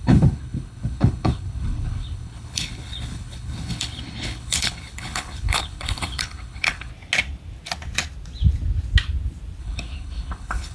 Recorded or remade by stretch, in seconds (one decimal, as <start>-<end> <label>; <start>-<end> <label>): 0.0-6.9 remade; 6.9-9.6 recorded; 9.6-10.7 remade